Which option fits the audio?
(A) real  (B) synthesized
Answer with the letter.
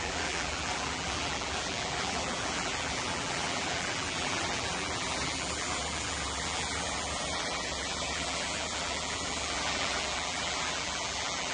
B